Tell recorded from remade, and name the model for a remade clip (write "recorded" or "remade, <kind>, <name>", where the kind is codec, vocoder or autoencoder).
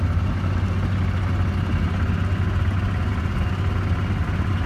recorded